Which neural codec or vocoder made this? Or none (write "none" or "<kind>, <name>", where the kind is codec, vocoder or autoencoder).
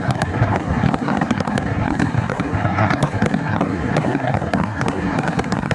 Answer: codec, SNAC